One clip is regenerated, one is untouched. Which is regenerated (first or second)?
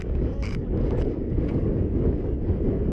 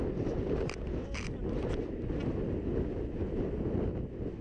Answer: first